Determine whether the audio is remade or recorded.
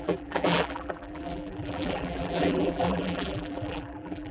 remade